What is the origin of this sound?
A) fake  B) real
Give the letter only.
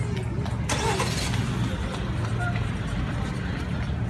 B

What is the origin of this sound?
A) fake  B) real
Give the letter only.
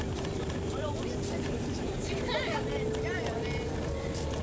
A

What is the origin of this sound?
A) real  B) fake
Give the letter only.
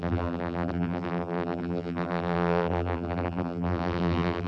B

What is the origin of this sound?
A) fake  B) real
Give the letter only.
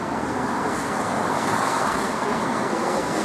A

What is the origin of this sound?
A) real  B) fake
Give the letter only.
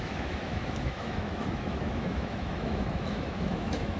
B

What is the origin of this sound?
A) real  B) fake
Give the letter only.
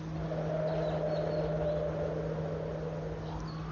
A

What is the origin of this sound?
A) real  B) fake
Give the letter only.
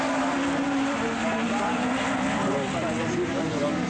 A